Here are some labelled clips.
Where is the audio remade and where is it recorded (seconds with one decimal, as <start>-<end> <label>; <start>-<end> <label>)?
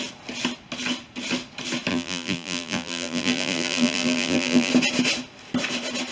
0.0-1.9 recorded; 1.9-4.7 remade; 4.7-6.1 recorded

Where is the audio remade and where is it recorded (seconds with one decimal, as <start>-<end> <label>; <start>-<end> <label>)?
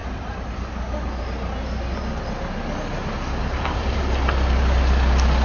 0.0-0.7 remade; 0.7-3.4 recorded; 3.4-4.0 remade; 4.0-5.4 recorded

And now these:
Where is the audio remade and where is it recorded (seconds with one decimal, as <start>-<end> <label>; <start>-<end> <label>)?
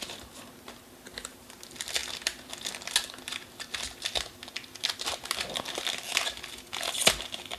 0.0-7.6 recorded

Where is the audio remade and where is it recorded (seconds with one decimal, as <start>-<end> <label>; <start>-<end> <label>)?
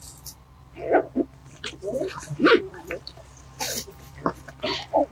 0.0-1.4 recorded; 1.4-4.5 remade; 4.5-5.1 recorded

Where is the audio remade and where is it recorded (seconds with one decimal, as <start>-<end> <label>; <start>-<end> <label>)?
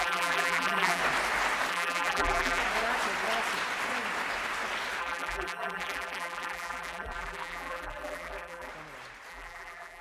0.0-1.0 remade; 1.0-1.7 recorded; 1.7-2.6 remade; 2.6-5.0 recorded; 5.0-8.7 remade; 8.7-9.3 recorded; 9.3-10.0 remade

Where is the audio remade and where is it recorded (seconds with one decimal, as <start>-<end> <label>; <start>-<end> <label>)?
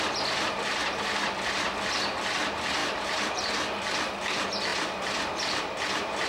0.0-2.8 recorded; 2.8-3.4 remade; 3.4-6.3 recorded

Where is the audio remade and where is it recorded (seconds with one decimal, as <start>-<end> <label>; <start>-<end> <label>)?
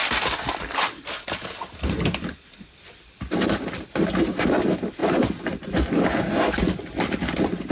0.0-3.3 remade; 3.3-7.7 recorded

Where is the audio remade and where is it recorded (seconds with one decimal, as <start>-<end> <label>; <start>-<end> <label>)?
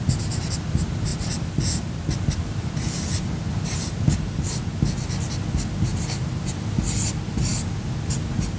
0.0-1.1 recorded; 1.1-3.6 remade; 3.6-5.9 recorded; 5.9-6.5 remade; 6.5-8.6 recorded